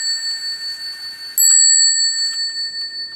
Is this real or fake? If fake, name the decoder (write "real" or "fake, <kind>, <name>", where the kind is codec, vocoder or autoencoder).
real